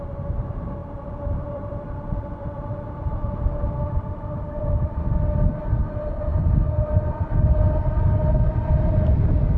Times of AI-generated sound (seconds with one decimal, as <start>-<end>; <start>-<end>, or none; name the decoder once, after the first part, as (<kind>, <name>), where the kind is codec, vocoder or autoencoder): 0.8-2.6 (vocoder, BigVGAN v2)